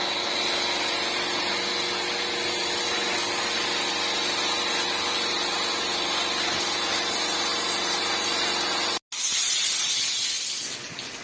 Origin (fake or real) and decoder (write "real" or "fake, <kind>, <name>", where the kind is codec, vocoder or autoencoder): real